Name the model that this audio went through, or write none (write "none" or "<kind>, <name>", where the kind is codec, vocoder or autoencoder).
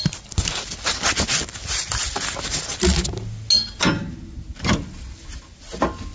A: none